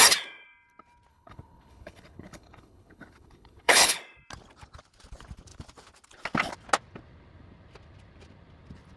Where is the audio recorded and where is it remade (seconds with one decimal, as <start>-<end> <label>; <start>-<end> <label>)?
0.0-1.1 recorded; 1.1-4.0 remade; 4.0-9.0 recorded